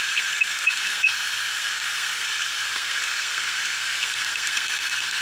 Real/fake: fake